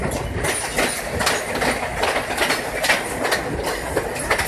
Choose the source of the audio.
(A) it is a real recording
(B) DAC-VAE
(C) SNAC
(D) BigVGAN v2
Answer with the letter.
A